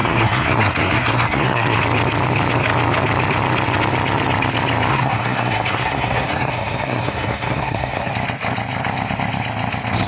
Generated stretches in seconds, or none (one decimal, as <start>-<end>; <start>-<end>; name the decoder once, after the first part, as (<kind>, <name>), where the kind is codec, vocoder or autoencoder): 0.0-1.8 (codec, SNAC); 4.9-8.1